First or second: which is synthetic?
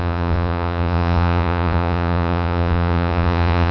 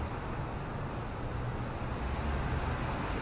first